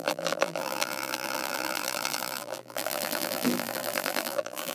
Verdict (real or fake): fake